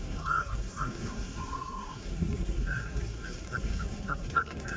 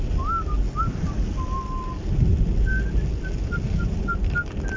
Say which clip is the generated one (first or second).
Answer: first